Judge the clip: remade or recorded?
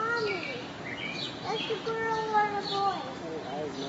recorded